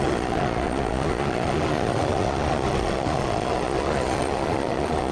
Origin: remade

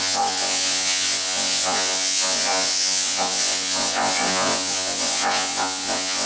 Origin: remade